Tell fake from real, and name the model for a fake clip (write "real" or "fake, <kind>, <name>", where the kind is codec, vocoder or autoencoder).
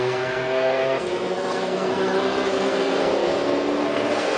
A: fake, codec, SNAC